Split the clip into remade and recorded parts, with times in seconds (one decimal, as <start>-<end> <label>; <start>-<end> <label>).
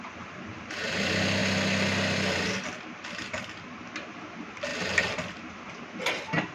0.0-6.5 recorded